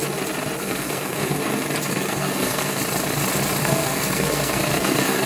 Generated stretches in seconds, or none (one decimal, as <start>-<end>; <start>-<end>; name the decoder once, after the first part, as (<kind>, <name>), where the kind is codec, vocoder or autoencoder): 0.6-1.4 (codec, SNAC); 1.9-2.8; 3.6-5.3